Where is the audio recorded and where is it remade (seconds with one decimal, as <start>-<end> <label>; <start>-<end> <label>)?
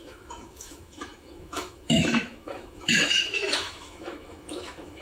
0.0-5.0 remade